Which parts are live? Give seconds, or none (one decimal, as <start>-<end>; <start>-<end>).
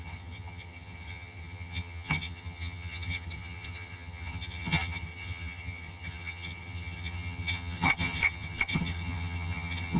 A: none